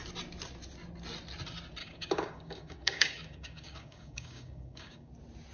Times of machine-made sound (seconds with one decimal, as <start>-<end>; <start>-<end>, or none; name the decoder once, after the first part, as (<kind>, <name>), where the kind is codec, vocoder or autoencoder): 1.8-5.1 (codec, DAC)

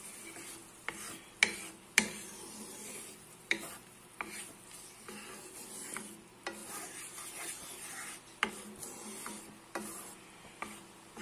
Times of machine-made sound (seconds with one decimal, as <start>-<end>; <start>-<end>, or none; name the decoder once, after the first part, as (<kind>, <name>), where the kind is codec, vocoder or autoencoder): none

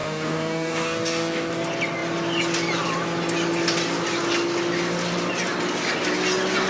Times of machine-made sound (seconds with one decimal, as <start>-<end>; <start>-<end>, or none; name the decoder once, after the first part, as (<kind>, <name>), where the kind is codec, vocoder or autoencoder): 0.0-1.5 (codec, DAC)

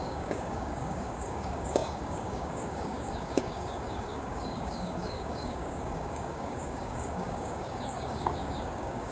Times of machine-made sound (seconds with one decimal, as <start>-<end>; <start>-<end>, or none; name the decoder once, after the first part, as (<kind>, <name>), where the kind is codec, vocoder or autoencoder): 0.0-9.1 (codec, DAC)

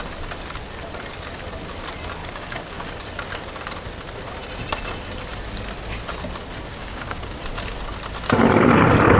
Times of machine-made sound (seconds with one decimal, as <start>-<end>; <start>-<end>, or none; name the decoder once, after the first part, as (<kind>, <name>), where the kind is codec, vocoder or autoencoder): 2.2-2.9 (codec, DAC); 6.7-7.4

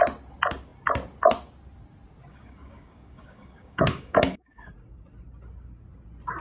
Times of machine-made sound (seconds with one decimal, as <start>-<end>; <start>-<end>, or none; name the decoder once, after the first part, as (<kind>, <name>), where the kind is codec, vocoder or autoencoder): 2.3-4.7 (codec, DAC)